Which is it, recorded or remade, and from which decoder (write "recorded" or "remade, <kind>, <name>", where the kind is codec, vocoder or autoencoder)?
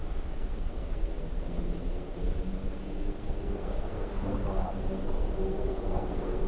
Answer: remade, codec, SNAC